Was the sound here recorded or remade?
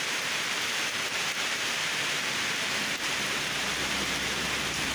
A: remade